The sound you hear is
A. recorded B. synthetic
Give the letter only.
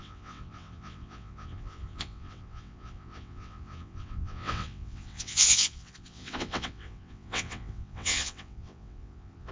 B